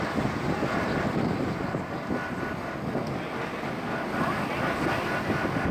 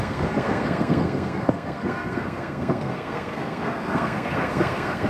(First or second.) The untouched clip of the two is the first